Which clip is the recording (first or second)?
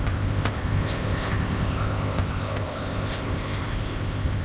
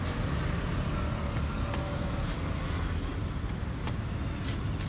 second